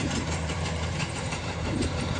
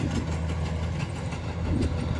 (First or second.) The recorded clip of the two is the second